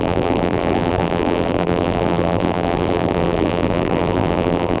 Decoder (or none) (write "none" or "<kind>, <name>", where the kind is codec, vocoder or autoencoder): vocoder, BigVGAN v2